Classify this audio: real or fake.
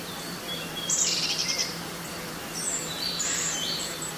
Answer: fake